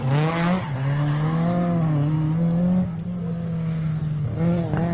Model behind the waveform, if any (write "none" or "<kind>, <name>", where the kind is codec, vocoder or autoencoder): none